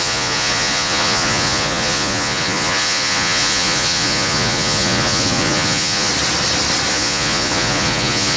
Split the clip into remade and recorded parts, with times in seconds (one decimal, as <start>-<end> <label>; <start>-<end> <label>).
0.0-6.1 remade; 6.1-6.9 recorded; 6.9-8.4 remade